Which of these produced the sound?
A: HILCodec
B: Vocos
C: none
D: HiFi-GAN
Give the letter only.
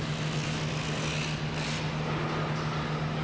C